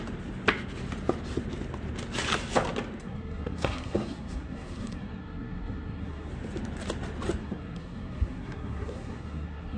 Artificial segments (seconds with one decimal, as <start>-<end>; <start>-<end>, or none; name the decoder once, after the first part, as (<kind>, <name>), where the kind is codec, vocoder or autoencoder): 3.0-6.3 (codec, SNAC); 7.4-9.8